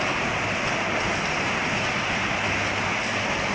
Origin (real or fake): real